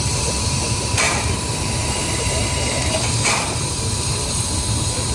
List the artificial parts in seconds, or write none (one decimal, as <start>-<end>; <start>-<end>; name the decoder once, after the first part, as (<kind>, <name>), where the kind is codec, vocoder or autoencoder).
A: 0.0-5.1 (vocoder, BigVGAN v2)